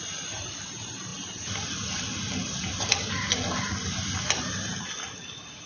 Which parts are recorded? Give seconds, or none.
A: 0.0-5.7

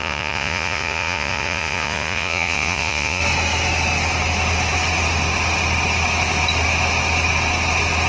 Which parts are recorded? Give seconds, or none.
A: 3.2-8.1